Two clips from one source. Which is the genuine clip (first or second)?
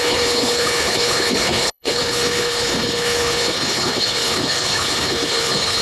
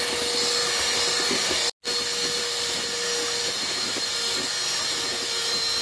second